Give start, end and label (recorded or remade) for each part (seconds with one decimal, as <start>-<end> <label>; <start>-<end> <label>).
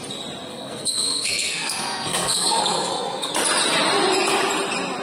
0.0-0.5 recorded; 0.5-3.3 remade; 3.3-5.0 recorded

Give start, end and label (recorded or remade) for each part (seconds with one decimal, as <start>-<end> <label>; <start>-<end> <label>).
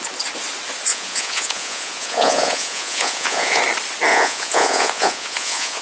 0.0-0.9 recorded; 0.9-3.6 remade; 3.6-4.1 recorded; 4.1-5.8 remade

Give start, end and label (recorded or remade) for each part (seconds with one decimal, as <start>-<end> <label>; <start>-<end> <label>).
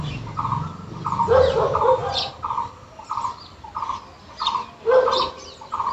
0.0-5.9 recorded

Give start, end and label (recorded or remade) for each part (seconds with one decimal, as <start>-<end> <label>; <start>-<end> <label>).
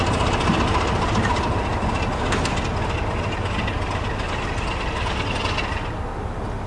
0.0-6.7 recorded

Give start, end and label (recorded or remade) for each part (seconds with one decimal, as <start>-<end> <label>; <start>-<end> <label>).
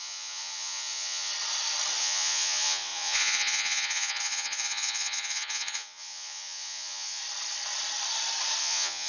0.0-1.3 remade; 1.3-2.0 recorded; 2.0-7.2 remade; 7.2-8.6 recorded; 8.6-9.1 remade